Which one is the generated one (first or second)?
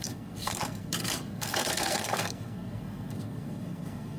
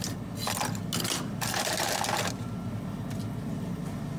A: first